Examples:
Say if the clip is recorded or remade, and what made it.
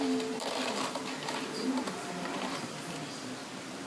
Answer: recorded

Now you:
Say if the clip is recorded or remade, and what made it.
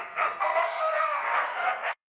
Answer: remade, codec, SNAC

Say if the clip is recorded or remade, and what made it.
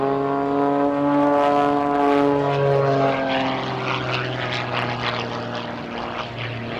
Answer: recorded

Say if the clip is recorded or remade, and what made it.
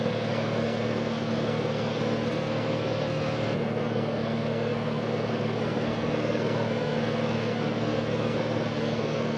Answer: remade, codec, SNAC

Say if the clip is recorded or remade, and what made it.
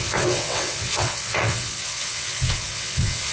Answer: remade, vocoder, WaveNeXt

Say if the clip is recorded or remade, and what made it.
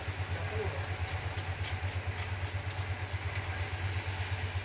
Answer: recorded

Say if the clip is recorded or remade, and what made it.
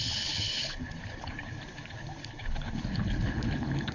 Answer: remade, codec, HILCodec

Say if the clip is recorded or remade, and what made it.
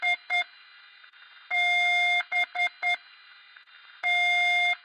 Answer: recorded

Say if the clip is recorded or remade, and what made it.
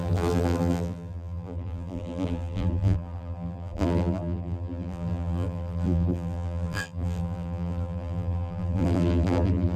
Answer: remade, vocoder, BigVGAN v2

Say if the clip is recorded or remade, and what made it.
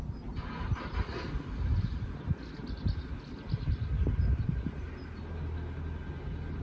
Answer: recorded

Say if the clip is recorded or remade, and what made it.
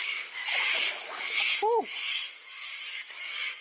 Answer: remade, codec, DAC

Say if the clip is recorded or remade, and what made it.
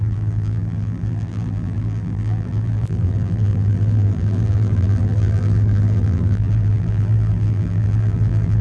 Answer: remade, vocoder, BigVGAN v2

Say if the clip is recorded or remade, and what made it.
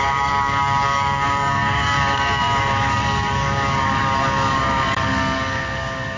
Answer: remade, codec, DAC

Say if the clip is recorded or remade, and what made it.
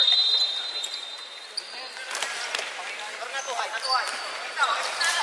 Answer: recorded